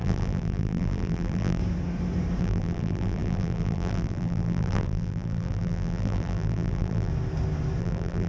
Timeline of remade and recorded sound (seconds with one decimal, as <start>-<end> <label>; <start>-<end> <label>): 0.0-1.6 remade; 1.6-2.4 recorded; 2.4-7.1 remade; 7.1-7.8 recorded; 7.8-8.3 remade